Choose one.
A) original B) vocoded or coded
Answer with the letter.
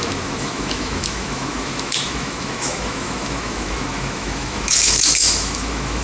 B